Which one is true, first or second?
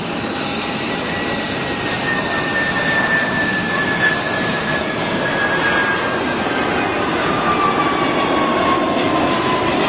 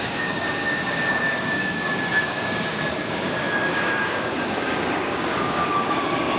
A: first